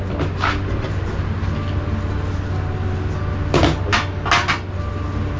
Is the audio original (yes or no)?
yes